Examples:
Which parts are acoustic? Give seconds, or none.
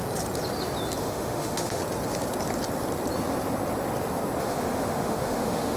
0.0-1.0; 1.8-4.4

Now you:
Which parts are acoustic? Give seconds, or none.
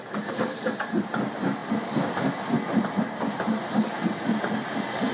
0.0-5.1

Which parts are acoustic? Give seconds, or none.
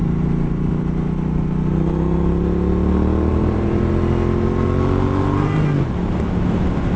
0.7-3.3; 3.9-7.0